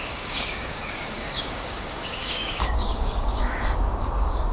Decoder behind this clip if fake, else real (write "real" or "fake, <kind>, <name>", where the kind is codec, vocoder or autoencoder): fake, codec, DAC